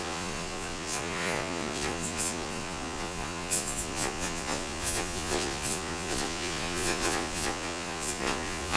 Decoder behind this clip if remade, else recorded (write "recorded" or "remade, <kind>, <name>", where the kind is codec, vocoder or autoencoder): remade, vocoder, Vocos